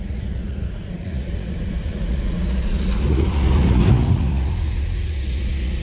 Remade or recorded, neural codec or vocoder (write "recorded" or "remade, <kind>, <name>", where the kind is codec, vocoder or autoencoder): remade, vocoder, Vocos